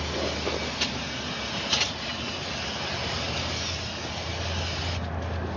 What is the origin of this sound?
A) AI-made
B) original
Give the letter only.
B